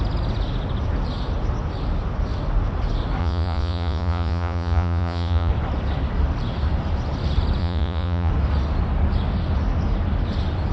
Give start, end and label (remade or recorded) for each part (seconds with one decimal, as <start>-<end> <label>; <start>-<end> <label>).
0.0-3.2 recorded; 3.2-5.5 remade; 5.5-7.6 recorded; 7.6-8.3 remade; 8.3-10.7 recorded